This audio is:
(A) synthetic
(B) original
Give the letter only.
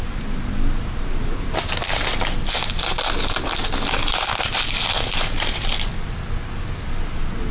B